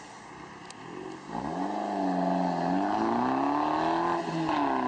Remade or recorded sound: recorded